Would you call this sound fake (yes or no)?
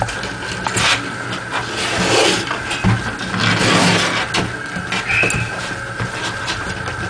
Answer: no